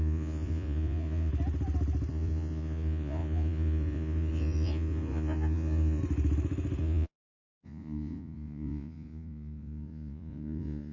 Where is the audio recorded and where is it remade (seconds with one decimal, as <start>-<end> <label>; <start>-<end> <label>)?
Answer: 0.0-1.3 remade; 1.3-2.1 recorded; 2.1-6.0 remade; 6.0-6.8 recorded; 6.8-10.9 remade